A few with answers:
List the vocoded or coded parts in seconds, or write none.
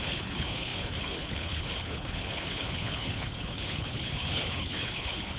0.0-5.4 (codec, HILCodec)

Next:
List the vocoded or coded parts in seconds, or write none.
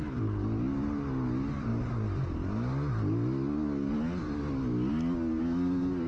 none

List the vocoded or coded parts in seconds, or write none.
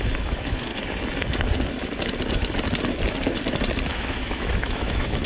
0.0-0.7 (autoencoder, DAC-VAE); 3.9-5.3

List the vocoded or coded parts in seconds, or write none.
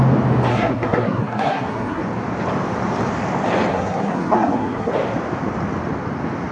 0.5-2.0 (codec, SNAC); 3.7-4.9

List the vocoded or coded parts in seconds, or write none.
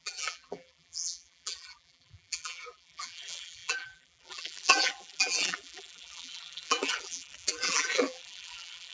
0.0-8.9 (vocoder, BigVGAN v2)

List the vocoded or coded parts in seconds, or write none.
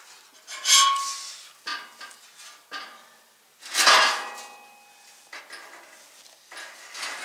none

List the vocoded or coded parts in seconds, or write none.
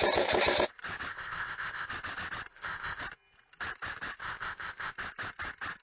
1.1-1.9 (codec, ZipCodec); 2.5-3.0; 4.2-4.9